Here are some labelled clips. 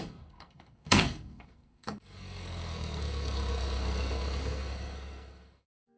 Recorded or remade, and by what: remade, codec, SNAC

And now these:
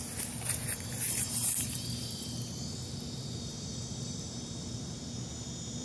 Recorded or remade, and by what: remade, vocoder, BigVGAN v2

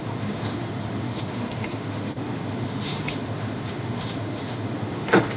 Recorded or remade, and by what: remade, autoencoder, DAC-VAE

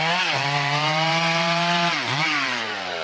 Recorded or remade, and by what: remade, vocoder, BigVGAN v2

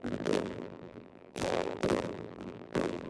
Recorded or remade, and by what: remade, vocoder, BigVGAN v2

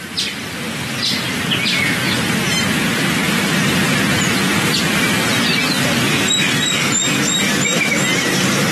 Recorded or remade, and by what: recorded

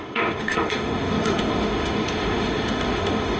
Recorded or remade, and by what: remade, autoencoder, DAC-VAE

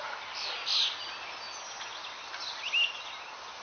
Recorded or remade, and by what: recorded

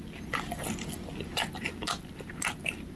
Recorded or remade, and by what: recorded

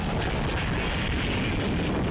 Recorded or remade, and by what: recorded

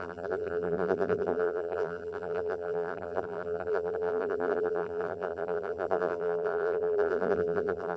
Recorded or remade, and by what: remade, vocoder, BigVGAN v2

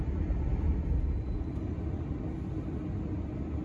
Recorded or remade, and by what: recorded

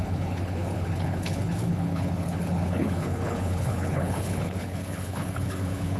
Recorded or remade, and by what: remade, codec, HILCodec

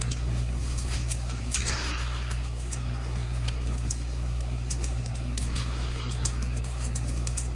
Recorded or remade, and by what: remade, codec, SNAC